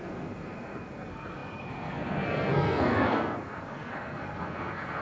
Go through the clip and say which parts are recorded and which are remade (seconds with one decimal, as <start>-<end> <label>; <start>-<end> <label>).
0.0-5.0 remade